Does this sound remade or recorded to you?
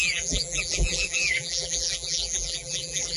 remade